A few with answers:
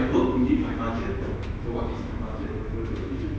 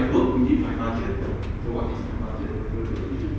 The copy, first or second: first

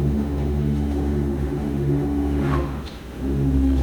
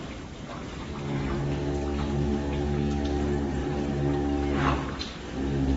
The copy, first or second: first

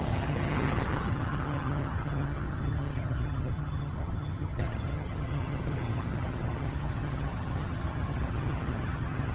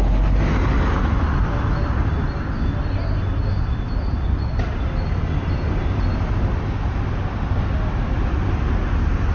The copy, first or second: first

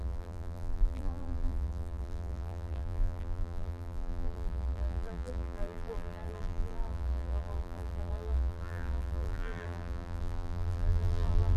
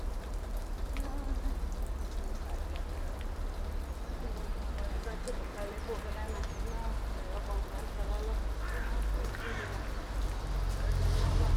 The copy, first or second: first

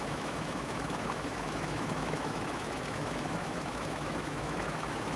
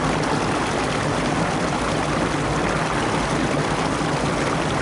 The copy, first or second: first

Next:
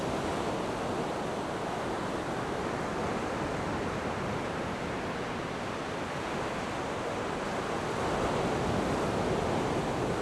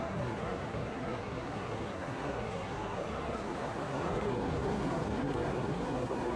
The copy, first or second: second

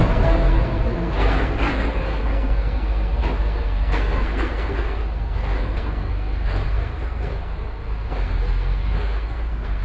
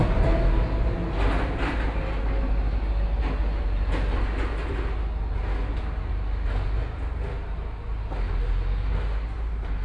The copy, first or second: first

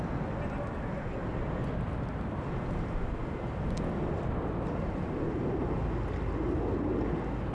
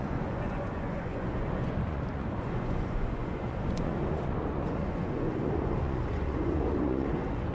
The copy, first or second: second